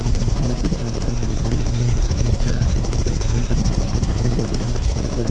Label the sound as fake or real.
fake